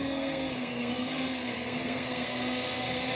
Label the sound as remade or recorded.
remade